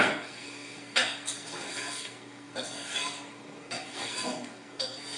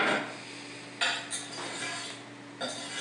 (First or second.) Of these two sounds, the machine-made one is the first